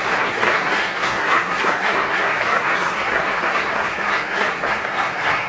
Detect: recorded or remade remade